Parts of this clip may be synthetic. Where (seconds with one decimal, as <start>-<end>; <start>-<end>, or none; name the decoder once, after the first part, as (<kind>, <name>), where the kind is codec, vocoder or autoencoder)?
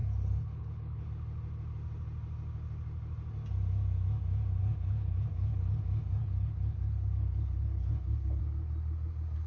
0.0-1.1 (codec, HILCodec); 4.6-5.8; 6.2-8.4